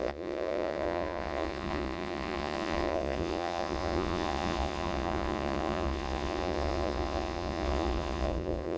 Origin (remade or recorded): remade